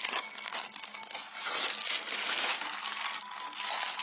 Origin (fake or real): real